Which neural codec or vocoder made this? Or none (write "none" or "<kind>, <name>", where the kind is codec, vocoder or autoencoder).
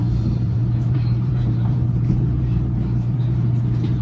vocoder, BigVGAN v2